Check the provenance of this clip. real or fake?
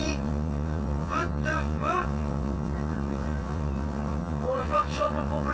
fake